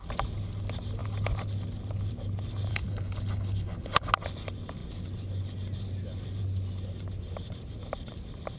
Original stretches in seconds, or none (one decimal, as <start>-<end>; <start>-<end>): 0.0-2.7; 4.1-8.6